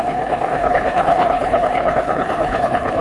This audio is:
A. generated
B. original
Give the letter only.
A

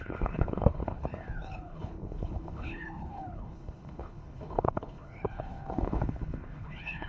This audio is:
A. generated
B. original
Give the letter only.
A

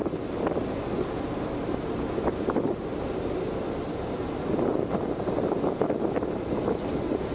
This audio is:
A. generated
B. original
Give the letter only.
B